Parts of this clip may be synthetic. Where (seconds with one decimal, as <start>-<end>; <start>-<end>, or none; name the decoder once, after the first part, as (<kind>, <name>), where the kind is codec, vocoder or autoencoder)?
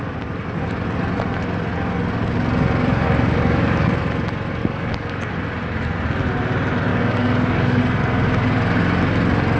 2.9-3.9 (codec, DAC); 4.6-5.3; 6.9-7.8